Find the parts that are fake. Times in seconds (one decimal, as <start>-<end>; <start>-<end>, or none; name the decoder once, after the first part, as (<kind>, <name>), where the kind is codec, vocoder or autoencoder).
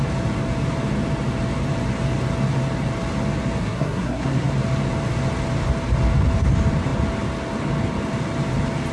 3.6-4.5 (codec, SNAC)